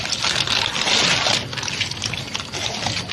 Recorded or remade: recorded